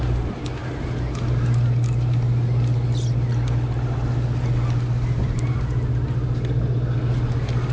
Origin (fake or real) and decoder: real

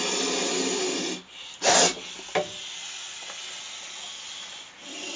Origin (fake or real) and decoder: real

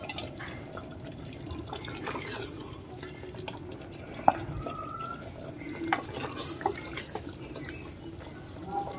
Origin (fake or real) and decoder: real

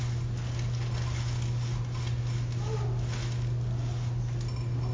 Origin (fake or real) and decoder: real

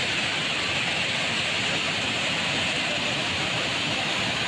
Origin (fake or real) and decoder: real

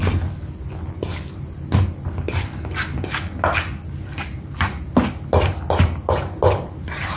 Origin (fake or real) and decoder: real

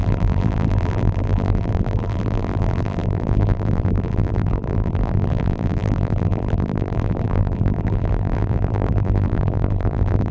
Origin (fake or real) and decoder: fake, vocoder, BigVGAN v2